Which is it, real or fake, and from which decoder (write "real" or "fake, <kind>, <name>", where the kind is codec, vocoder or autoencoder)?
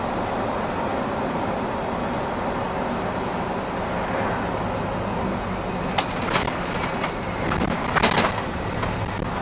real